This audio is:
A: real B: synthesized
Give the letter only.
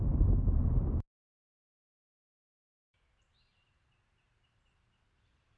B